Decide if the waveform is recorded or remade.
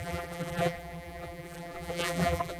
remade